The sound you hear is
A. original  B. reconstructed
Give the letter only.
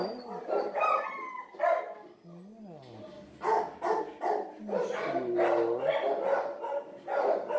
A